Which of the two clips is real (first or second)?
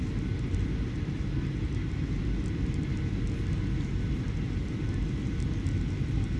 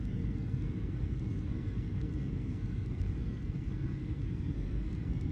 first